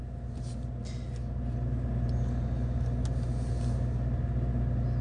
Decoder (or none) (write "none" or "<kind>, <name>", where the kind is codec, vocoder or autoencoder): none